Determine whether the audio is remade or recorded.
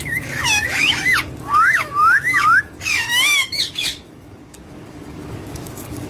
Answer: remade